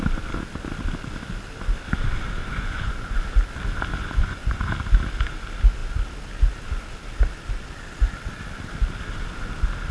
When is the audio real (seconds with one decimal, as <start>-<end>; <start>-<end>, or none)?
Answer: 0.0-2.4; 3.2-4.0; 4.7-9.9